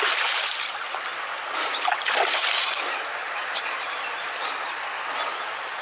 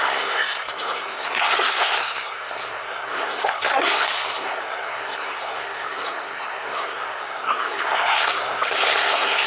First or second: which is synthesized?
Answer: second